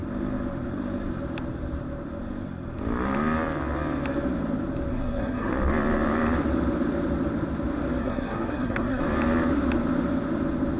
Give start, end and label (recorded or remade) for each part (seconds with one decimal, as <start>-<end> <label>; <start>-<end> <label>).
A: 0.0-4.9 recorded; 4.9-5.5 remade; 5.5-8.0 recorded; 8.0-9.0 remade; 9.0-10.8 recorded